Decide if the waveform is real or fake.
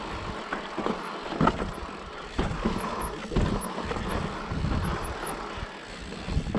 real